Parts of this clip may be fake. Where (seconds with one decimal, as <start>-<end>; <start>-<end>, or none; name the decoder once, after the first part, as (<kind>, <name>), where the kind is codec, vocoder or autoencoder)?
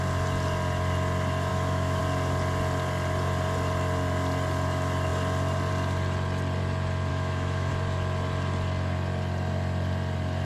1.5-2.0 (autoencoder, DAC-VAE); 7.1-7.7